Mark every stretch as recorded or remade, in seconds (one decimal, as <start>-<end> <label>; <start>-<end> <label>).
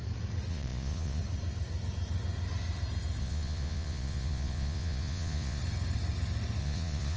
0.0-0.5 recorded; 0.5-1.2 remade; 1.2-3.2 recorded; 3.2-5.6 remade; 5.6-6.6 recorded; 6.6-7.2 remade